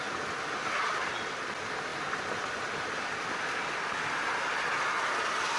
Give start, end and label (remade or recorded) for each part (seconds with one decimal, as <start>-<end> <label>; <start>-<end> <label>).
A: 0.0-5.6 recorded